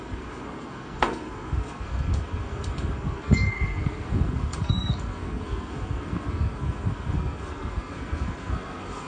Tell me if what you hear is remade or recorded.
remade